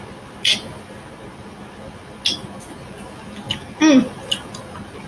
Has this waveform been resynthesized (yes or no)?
no